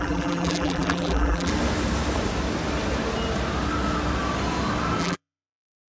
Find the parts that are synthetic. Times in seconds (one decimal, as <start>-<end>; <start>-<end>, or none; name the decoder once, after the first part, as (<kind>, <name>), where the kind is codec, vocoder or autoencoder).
0.0-1.5 (vocoder, BigVGAN v2); 5.0-5.9